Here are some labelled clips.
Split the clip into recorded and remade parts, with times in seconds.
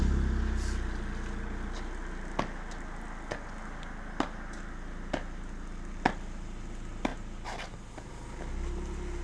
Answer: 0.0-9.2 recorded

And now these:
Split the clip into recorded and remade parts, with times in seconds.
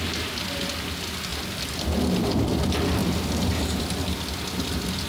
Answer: 0.0-5.1 recorded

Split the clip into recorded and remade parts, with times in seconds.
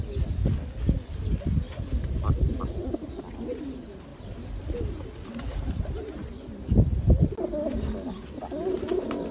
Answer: 0.0-9.3 recorded